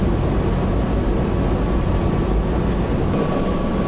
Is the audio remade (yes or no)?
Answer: no